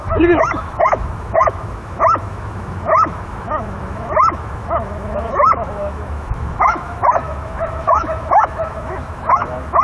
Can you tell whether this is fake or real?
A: fake